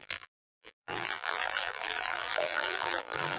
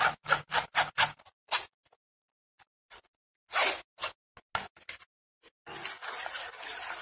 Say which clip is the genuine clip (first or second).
second